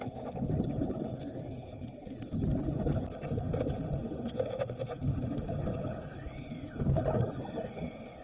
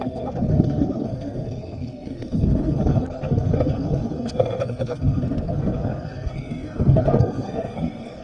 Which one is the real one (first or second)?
first